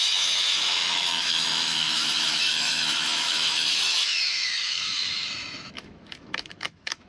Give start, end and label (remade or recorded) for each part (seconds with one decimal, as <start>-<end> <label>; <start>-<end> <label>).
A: 0.0-7.1 remade